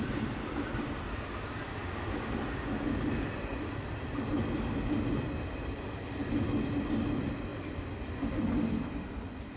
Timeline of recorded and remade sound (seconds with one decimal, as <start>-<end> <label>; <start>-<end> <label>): 0.0-9.6 recorded